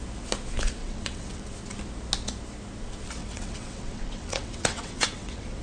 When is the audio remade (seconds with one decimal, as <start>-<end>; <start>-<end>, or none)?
0.8-1.4; 3.2-5.6